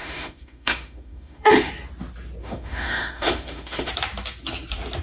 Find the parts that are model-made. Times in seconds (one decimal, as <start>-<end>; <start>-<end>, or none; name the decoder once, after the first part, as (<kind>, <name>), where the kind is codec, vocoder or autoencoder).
0.0-1.7 (autoencoder, DAC-VAE); 2.4-3.9